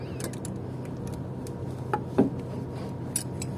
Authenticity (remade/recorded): recorded